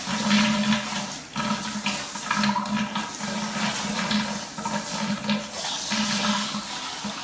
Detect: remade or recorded recorded